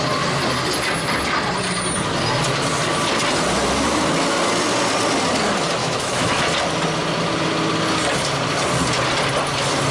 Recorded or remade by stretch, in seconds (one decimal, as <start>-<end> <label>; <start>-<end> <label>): 0.0-5.8 recorded; 5.8-6.4 remade; 6.4-9.9 recorded